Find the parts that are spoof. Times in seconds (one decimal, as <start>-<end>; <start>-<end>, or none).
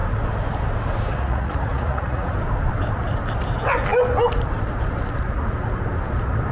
1.1-2.3